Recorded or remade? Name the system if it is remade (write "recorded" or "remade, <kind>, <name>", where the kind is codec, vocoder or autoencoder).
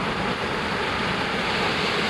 recorded